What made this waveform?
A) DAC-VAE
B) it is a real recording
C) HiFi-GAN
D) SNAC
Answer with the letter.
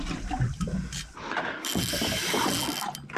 B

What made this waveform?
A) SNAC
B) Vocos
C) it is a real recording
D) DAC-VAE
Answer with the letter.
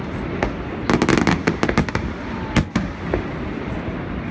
C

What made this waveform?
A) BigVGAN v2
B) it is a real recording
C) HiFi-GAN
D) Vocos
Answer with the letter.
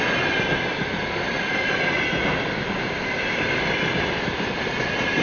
B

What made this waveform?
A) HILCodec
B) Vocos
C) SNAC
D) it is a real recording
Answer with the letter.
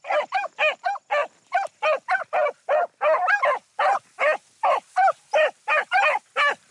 D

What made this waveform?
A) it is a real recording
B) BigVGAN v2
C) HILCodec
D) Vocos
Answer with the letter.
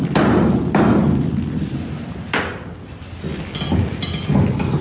A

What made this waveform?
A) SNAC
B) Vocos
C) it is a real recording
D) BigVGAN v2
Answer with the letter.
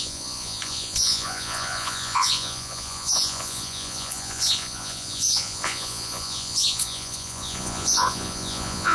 B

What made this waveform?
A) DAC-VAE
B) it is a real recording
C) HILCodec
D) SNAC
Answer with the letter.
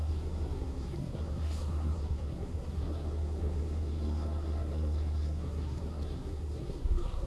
D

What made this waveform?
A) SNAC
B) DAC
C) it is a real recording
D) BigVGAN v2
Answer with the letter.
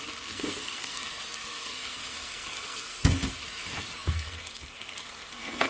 A